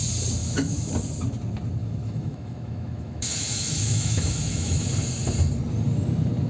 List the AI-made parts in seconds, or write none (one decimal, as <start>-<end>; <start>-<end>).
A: 0.4-0.9; 1.8-4.9